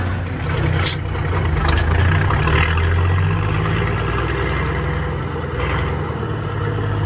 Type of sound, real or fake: real